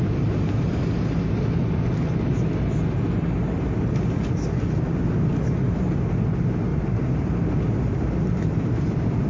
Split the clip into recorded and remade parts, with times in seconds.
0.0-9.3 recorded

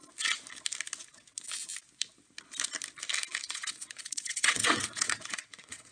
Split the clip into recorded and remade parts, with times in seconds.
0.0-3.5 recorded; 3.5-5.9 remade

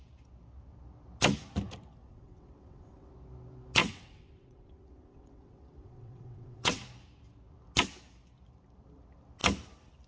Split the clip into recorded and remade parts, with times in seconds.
0.0-2.0 recorded; 2.0-3.1 remade; 3.1-3.8 recorded; 3.8-6.8 remade; 6.8-10.1 recorded